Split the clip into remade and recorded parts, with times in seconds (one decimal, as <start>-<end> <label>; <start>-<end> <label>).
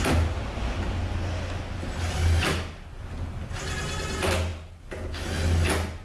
0.0-6.0 recorded